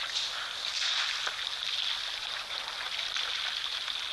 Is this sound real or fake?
real